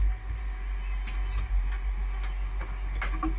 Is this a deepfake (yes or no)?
no